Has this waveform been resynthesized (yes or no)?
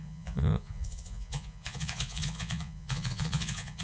yes